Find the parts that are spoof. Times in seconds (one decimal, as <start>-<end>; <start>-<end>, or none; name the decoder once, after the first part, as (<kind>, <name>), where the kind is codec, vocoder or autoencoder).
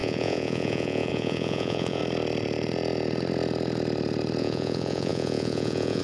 0.0-2.0 (vocoder, Vocos); 4.4-6.0